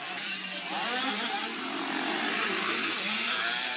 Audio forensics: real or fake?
fake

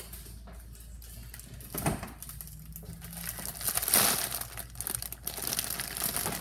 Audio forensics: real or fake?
real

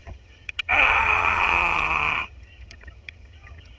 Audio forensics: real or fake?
fake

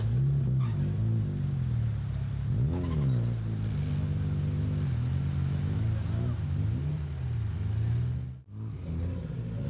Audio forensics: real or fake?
real